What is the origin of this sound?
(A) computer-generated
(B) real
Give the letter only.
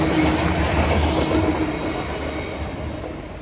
B